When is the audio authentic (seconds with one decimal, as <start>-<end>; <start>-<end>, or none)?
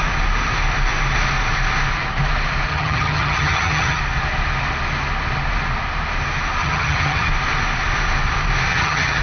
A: 0.0-2.7; 4.0-6.6; 7.3-8.7